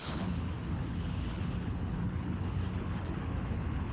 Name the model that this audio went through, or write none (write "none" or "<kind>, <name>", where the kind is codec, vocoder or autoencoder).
codec, HILCodec